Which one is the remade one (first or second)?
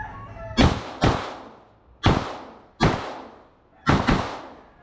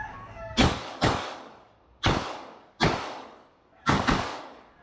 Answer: second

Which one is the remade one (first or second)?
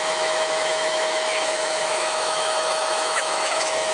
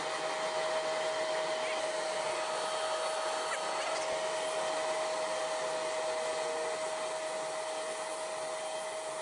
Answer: first